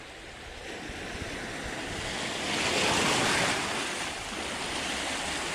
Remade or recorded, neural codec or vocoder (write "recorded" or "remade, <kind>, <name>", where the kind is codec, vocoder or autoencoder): recorded